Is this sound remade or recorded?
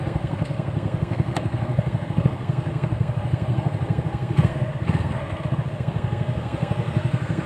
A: remade